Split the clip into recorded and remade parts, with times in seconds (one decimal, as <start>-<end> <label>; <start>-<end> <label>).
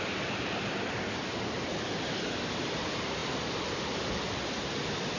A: 0.0-5.2 remade